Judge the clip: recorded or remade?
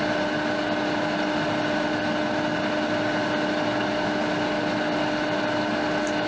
recorded